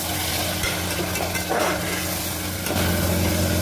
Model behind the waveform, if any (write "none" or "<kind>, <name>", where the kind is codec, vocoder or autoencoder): none